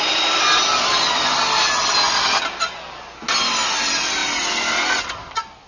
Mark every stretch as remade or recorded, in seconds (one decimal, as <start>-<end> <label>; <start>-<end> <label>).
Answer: 0.0-5.7 recorded